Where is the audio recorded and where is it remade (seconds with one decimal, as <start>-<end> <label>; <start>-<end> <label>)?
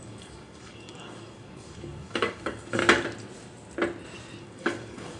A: 0.0-2.8 remade; 2.8-4.4 recorded; 4.4-5.2 remade